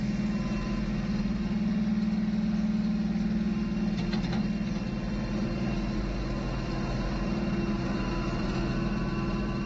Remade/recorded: recorded